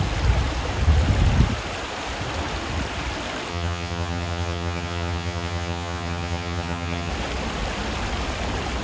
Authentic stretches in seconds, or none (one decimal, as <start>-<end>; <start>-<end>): 0.0-3.5; 7.1-8.8